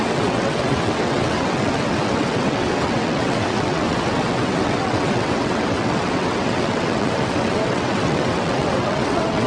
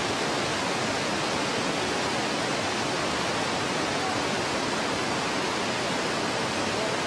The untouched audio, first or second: second